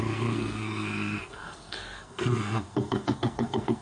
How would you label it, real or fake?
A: fake